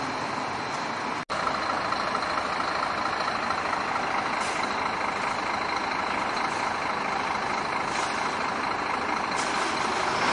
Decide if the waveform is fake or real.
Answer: real